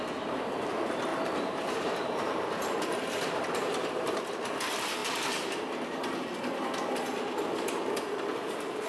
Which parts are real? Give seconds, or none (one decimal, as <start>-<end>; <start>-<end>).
0.0-1.1; 4.2-8.3